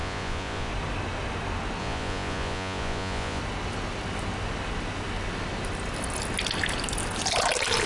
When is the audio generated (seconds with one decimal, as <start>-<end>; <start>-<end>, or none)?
0.0-0.7; 1.8-3.4